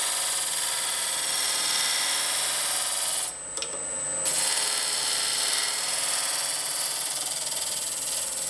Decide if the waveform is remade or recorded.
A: recorded